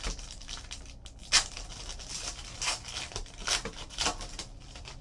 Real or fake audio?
real